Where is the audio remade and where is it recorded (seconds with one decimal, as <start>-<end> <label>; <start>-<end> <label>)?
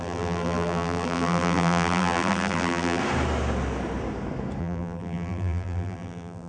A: 0.0-3.0 remade; 3.0-4.6 recorded; 4.6-6.5 remade